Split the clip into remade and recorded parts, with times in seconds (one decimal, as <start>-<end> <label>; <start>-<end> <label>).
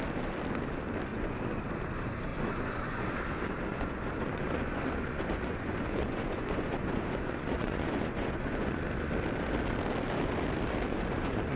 0.0-1.1 recorded; 1.1-1.6 remade; 1.6-2.3 recorded; 2.3-3.1 remade; 3.1-3.7 recorded; 3.7-8.8 remade; 8.8-10.9 recorded; 10.9-11.6 remade